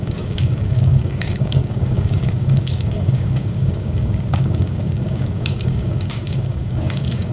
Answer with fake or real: fake